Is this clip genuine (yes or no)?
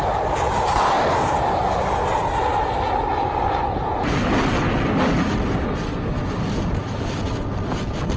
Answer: yes